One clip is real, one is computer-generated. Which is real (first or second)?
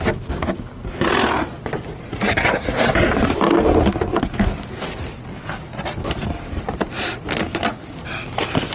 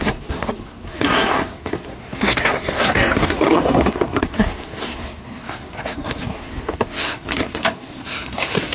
first